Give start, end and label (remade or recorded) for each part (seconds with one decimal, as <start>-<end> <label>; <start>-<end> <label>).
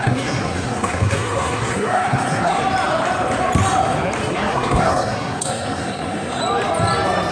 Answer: 0.0-2.6 remade; 2.6-4.3 recorded; 4.3-6.4 remade; 6.4-7.3 recorded